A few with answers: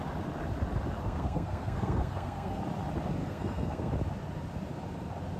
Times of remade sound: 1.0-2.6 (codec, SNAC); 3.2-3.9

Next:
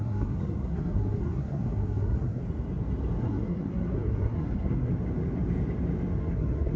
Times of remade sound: 0.0-2.4 (codec, SNAC); 3.2-4.9; 6.2-6.8

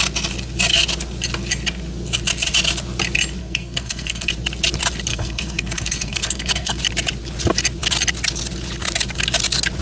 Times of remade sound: 3.4-4.3 (codec, SNAC); 5.1-6.8

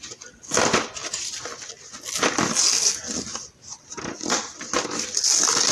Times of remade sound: none

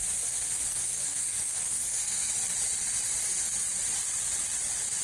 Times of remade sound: 0.7-2.3 (codec, SNAC)